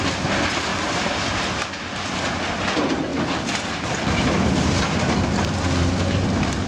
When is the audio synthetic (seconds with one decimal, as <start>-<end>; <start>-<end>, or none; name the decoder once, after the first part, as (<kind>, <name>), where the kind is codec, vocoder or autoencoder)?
0.7-1.3 (vocoder, BigVGAN v2); 3.1-5.0